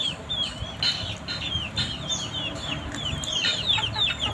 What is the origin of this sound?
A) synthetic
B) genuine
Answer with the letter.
B